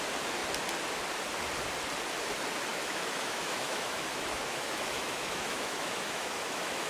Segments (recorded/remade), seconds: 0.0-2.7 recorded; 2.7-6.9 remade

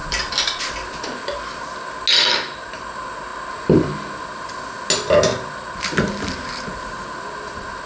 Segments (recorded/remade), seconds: 0.0-0.6 remade; 0.6-7.9 recorded

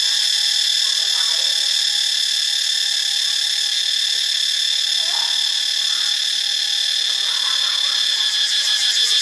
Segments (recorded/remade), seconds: 0.0-9.2 recorded

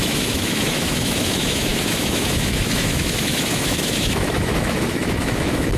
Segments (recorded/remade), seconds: 0.0-5.8 remade

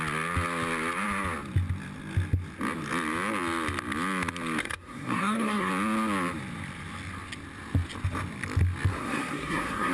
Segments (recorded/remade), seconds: 0.0-4.6 recorded; 4.6-5.7 remade; 5.7-8.9 recorded; 8.9-9.9 remade

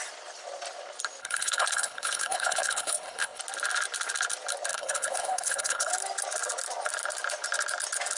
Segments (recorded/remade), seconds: 0.0-1.2 recorded; 1.2-3.4 remade; 3.4-4.7 recorded; 4.7-5.9 remade; 5.9-8.2 recorded